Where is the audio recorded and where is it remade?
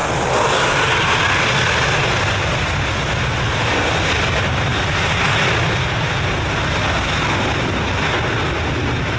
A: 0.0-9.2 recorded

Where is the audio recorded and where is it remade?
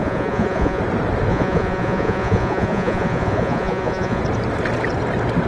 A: 0.0-0.8 remade; 0.8-1.3 recorded; 1.3-4.2 remade; 4.2-5.5 recorded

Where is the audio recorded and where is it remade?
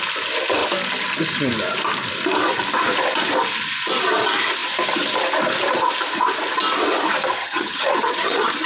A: 0.0-7.4 recorded; 7.4-8.7 remade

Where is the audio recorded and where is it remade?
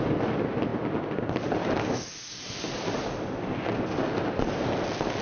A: 0.0-5.2 recorded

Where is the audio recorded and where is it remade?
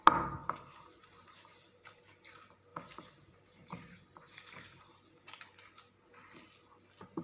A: 0.0-0.4 recorded; 0.4-2.0 remade; 2.0-2.7 recorded; 2.7-5.4 remade; 5.4-7.2 recorded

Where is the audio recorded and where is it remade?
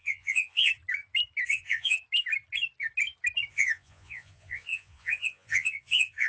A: 0.0-0.7 remade; 0.7-1.5 recorded; 1.5-2.0 remade; 2.0-3.5 recorded; 3.5-6.3 remade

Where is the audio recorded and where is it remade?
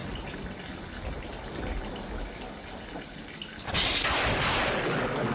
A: 0.0-5.3 recorded